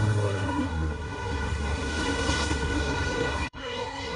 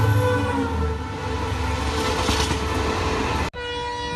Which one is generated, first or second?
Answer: first